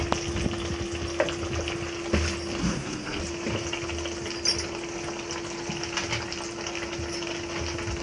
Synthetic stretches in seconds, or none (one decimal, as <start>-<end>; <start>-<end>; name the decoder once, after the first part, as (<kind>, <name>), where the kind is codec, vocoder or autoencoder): 2.6-3.2 (codec, SNAC)